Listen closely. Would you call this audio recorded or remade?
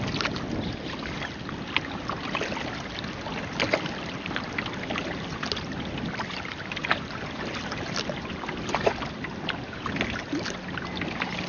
recorded